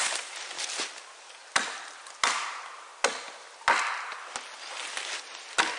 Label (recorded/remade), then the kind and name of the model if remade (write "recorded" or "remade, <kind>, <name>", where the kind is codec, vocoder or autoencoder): recorded